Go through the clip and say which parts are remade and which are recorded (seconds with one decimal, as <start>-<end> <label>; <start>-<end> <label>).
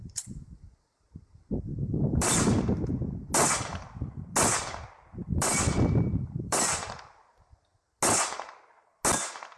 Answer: 0.0-2.3 remade; 2.3-3.7 recorded; 3.7-4.2 remade; 4.2-5.2 recorded; 5.2-6.8 remade; 6.8-9.6 recorded